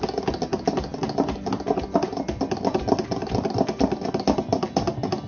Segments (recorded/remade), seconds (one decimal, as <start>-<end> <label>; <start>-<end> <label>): 0.0-5.3 recorded